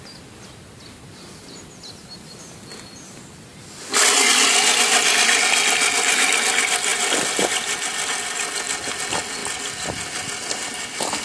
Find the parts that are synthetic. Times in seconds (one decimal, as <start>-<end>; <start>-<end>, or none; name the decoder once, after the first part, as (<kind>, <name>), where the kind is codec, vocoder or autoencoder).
3.5-5.4 (vocoder, BigVGAN v2); 9.4-11.2